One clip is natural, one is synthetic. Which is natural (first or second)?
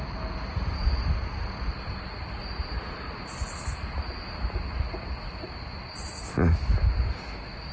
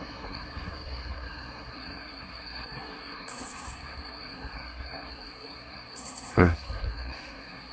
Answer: first